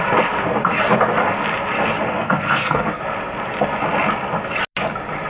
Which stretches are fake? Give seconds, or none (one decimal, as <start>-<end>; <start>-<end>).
2.1-3.0